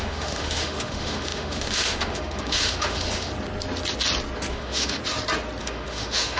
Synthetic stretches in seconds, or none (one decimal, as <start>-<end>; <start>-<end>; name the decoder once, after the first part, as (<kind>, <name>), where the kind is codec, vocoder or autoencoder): 0.0-3.3 (autoencoder, DAC-VAE); 4.5-5.0; 5.6-6.4